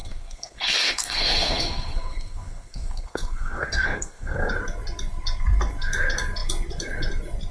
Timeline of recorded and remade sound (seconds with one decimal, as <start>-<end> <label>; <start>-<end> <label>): 0.0-4.5 remade; 4.5-7.5 recorded